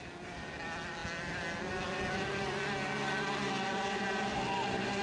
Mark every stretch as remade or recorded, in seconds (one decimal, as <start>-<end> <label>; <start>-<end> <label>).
0.0-5.0 recorded